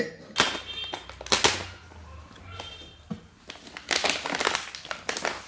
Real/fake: real